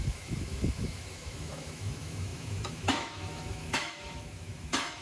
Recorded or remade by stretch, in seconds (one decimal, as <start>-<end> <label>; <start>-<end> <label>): 0.0-5.0 remade